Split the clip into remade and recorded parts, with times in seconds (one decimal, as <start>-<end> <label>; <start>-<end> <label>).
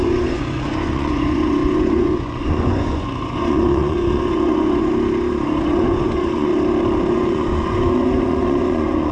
0.0-4.9 remade; 4.9-5.5 recorded; 5.5-6.5 remade; 6.5-7.1 recorded; 7.1-9.1 remade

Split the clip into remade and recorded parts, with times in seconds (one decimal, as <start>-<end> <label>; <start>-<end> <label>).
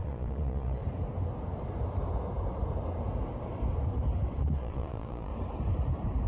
0.0-0.8 remade; 0.8-4.4 recorded; 4.4-5.3 remade; 5.3-6.3 recorded